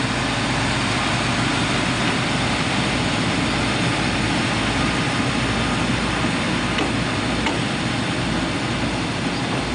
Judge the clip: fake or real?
real